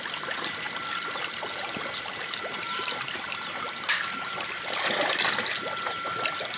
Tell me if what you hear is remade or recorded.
recorded